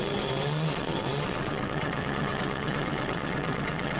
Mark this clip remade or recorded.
remade